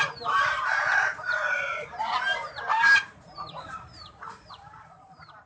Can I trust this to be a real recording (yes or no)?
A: no